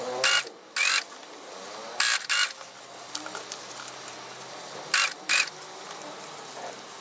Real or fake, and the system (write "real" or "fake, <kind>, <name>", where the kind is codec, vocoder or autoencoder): real